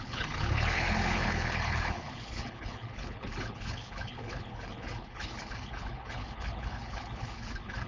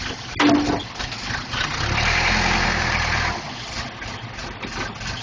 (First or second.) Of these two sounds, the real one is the second